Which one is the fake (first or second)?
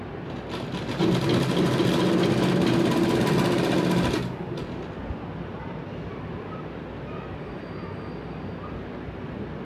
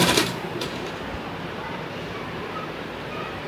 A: second